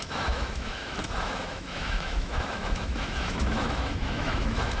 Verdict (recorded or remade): remade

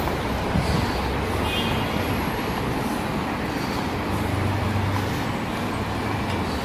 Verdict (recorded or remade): recorded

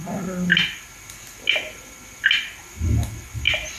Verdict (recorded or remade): recorded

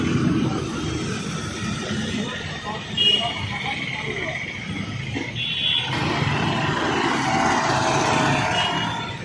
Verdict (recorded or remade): recorded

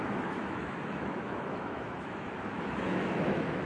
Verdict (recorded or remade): remade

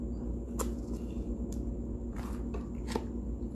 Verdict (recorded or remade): recorded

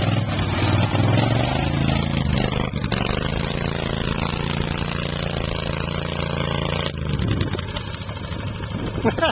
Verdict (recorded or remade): recorded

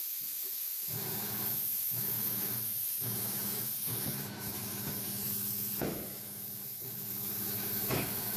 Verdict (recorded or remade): remade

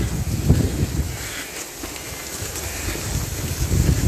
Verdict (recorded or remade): recorded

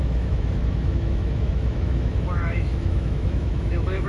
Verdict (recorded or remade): remade